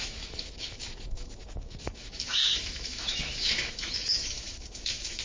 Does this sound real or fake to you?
fake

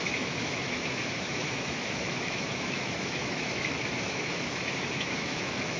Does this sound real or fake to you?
fake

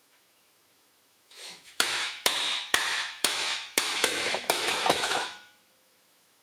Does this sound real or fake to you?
fake